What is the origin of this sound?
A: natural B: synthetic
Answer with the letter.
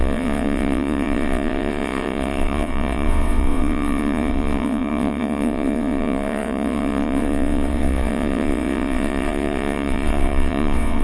B